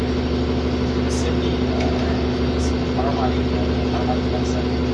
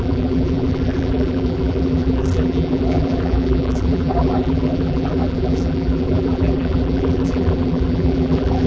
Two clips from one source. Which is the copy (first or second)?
second